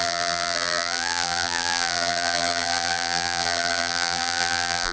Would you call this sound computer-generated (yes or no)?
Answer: yes